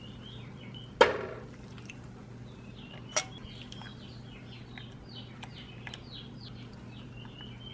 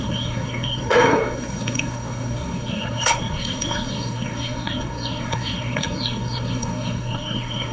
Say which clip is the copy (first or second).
second